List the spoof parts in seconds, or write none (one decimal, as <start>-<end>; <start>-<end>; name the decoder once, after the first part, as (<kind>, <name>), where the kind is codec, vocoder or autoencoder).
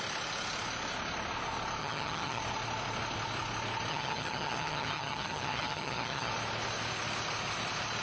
1.8-2.4 (vocoder, HiFi-GAN); 3.9-6.3